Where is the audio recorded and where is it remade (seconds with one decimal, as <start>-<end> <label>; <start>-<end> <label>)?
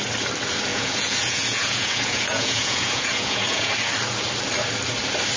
0.0-0.7 recorded; 0.7-3.7 remade; 3.7-5.4 recorded